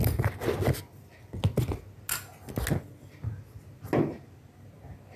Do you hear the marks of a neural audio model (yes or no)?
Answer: no